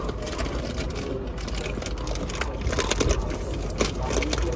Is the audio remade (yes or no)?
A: no